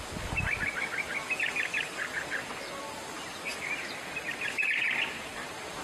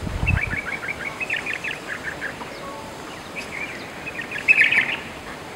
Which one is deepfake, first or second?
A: second